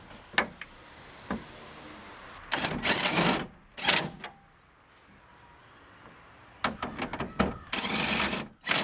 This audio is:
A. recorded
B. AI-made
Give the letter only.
A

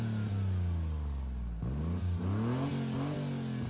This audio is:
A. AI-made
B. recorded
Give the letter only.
B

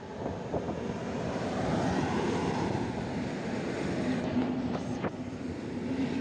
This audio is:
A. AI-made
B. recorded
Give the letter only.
B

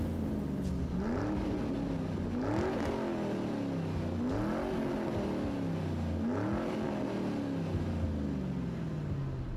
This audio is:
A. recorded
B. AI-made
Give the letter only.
A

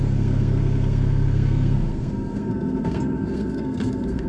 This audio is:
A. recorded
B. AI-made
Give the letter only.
B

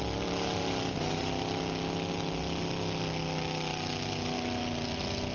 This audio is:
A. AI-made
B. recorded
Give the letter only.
B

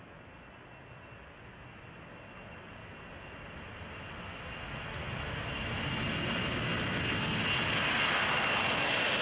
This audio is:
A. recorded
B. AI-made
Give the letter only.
A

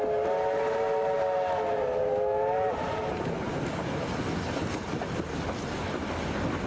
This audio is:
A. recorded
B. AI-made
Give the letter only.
A